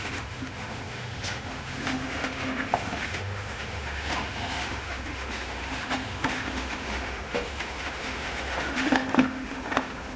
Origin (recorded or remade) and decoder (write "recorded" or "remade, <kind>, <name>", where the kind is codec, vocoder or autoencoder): remade, autoencoder, DAC-VAE